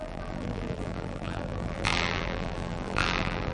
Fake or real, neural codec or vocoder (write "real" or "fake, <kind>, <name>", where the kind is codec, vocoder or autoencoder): fake, vocoder, BigVGAN v2